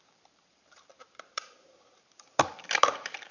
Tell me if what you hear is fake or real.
fake